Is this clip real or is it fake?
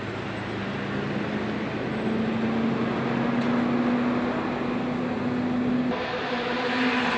real